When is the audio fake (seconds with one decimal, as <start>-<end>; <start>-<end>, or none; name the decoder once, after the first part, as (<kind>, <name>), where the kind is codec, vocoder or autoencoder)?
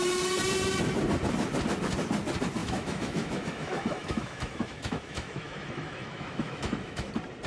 2.6-7.1 (autoencoder, DAC-VAE)